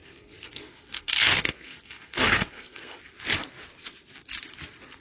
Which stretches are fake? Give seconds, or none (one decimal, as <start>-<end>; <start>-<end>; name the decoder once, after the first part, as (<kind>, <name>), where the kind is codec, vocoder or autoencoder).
0.0-3.0 (codec, SNAC)